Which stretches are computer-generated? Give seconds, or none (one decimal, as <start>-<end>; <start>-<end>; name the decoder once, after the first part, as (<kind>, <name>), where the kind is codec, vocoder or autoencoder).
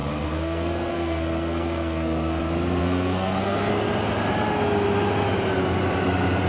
0.0-2.4 (codec, SNAC); 2.8-3.7